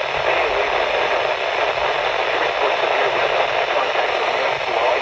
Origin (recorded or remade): recorded